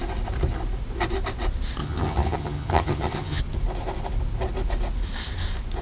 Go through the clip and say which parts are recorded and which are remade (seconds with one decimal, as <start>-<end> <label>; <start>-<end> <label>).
0.0-1.8 recorded; 1.8-3.4 remade; 3.4-5.8 recorded